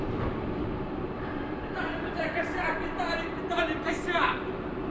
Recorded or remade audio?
remade